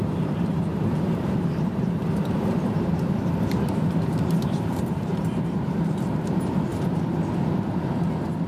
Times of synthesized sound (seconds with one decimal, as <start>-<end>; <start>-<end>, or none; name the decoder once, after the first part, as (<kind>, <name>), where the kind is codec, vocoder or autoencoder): 0.0-6.7 (vocoder, BigVGAN v2)